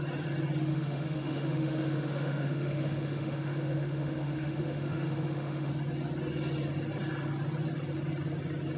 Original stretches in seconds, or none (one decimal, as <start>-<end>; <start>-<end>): 0.0-0.7; 5.7-8.8